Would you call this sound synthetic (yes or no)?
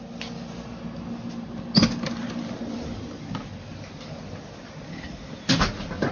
no